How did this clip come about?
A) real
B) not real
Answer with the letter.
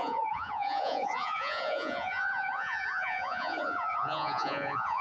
B